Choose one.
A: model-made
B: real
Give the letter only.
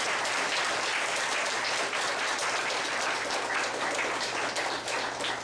B